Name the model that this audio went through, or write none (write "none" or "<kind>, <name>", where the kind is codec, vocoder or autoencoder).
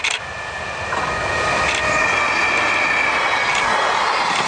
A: none